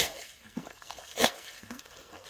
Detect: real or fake fake